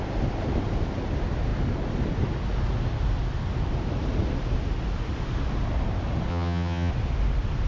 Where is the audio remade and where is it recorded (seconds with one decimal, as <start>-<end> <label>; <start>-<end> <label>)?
0.0-6.3 recorded; 6.3-6.9 remade; 6.9-7.7 recorded